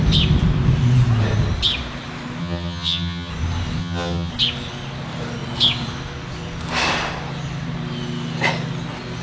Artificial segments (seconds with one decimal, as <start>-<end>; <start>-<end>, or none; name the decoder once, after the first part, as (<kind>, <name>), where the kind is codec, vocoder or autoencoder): 2.4-3.3 (vocoder, HiFi-GAN); 3.8-4.3